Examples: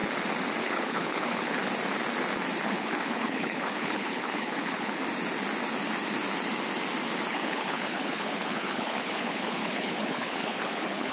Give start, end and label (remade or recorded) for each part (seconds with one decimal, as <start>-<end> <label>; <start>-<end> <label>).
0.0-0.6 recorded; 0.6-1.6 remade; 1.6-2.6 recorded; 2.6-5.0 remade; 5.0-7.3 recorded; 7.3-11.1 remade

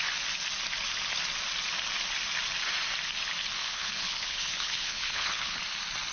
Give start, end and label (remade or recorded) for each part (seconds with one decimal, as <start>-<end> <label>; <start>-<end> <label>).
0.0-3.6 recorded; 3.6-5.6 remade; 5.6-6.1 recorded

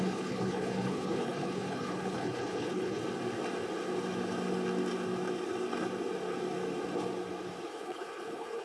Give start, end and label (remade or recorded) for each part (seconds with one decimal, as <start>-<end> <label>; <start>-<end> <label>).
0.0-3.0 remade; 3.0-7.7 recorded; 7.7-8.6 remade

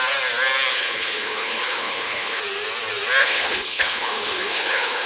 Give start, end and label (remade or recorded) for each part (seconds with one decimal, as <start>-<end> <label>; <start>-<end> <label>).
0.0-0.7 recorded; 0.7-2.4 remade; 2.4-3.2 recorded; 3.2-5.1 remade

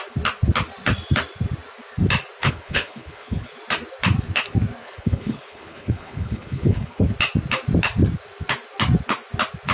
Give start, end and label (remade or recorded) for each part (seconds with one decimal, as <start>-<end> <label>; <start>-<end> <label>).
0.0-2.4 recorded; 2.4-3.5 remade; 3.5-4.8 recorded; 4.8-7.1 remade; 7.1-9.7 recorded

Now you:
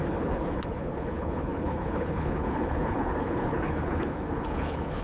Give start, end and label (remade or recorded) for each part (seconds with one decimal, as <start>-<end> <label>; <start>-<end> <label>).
0.0-5.0 remade